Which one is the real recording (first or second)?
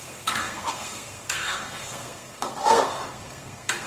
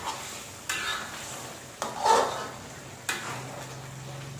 second